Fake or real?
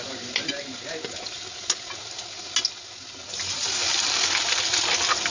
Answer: real